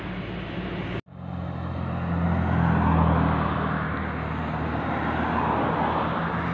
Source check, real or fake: real